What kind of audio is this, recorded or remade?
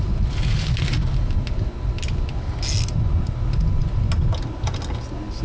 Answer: recorded